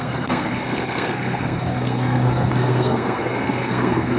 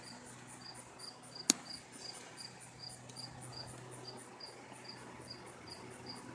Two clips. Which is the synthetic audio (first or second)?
first